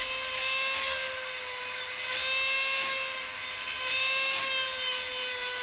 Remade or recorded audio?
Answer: recorded